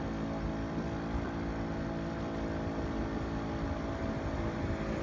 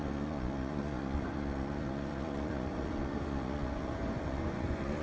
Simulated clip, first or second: second